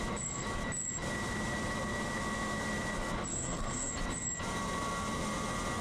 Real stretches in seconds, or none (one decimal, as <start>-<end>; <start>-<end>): 0.0-3.3; 3.9-5.8